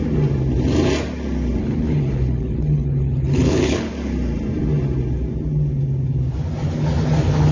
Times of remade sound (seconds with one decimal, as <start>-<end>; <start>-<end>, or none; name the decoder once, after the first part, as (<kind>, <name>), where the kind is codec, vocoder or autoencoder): 1.6-3.9 (codec, HILCodec)